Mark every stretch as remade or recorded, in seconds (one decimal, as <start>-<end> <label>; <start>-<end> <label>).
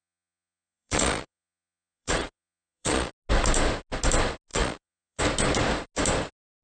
0.0-3.1 remade; 3.1-4.5 recorded; 4.5-5.2 remade; 5.2-6.6 recorded